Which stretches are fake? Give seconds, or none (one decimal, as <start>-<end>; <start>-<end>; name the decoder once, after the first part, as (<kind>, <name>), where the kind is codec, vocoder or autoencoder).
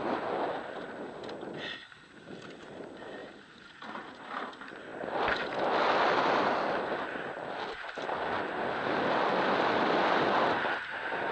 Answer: 3.2-4.2 (vocoder, Vocos)